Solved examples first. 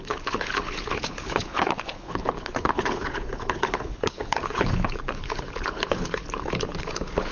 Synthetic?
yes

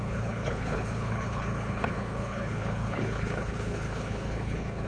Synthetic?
yes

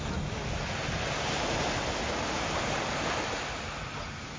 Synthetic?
no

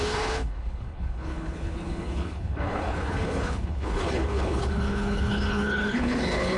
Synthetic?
yes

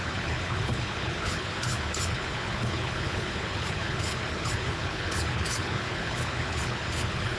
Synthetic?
yes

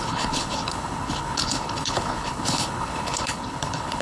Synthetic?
yes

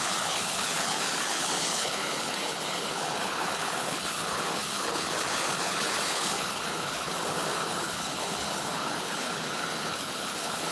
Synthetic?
yes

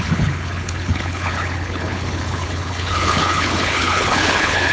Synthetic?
yes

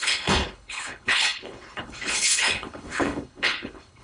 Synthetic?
yes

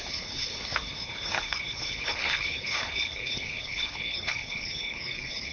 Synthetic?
yes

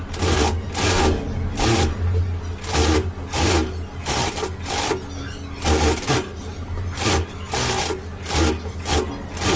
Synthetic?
no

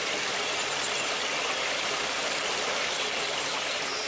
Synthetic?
no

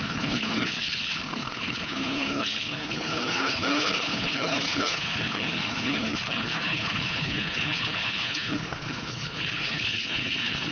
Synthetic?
yes